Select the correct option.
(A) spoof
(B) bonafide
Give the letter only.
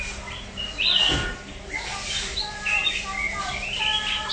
B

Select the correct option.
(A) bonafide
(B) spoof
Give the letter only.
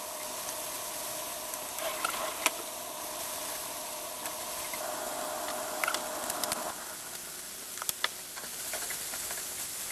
A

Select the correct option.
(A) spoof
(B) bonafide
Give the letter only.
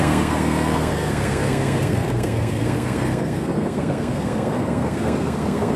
A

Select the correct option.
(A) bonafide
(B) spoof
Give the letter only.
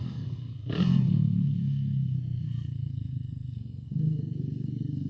B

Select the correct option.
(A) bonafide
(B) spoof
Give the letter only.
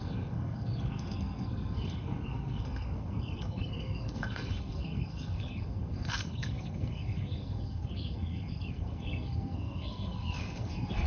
B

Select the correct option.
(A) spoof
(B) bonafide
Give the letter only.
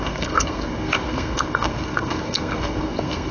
A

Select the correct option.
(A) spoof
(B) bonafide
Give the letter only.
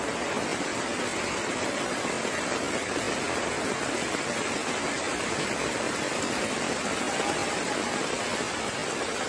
B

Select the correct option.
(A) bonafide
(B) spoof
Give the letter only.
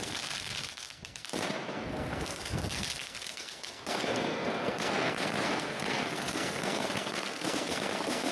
B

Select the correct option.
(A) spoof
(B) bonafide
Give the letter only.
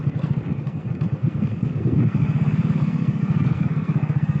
A